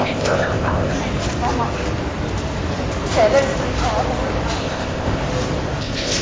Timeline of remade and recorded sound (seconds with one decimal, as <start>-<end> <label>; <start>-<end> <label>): 0.0-0.9 remade; 0.9-4.6 recorded; 4.6-5.2 remade; 5.2-5.8 recorded; 5.8-6.2 remade

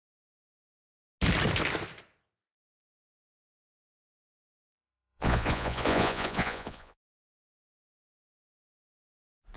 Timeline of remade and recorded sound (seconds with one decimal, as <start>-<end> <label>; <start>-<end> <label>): 0.0-4.4 recorded; 4.4-7.1 remade; 7.1-9.6 recorded

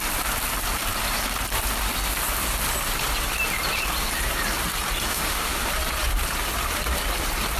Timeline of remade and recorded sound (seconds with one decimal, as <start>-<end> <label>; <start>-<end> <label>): 0.0-5.1 recorded; 5.1-5.7 remade; 5.7-7.6 recorded

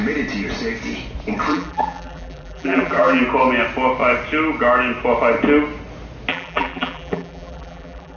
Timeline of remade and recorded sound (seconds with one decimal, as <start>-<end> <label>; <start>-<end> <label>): 0.0-1.5 recorded; 1.5-3.2 remade; 3.2-6.3 recorded; 6.3-8.2 remade

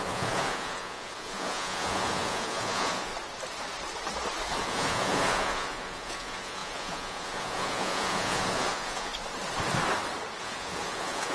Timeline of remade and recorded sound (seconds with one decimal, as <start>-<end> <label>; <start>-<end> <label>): 0.0-3.1 remade; 3.1-4.6 recorded; 4.6-9.1 remade; 9.1-10.4 recorded; 10.4-11.3 remade

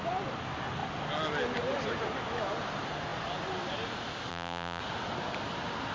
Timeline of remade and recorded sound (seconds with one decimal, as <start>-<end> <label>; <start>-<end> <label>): 0.0-4.3 recorded; 4.3-4.8 remade; 4.8-5.9 recorded

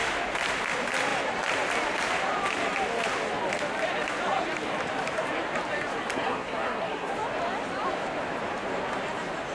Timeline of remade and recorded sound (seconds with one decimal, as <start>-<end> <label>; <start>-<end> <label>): 0.0-6.1 recorded; 6.1-7.1 remade; 7.1-9.5 recorded